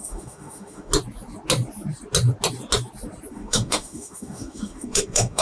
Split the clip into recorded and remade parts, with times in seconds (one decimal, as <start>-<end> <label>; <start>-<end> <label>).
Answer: 0.0-0.9 remade; 0.9-3.3 recorded; 3.3-5.4 remade